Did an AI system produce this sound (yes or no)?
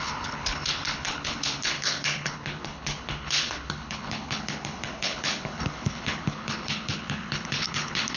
yes